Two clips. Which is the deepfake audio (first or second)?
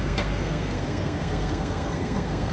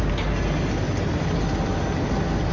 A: first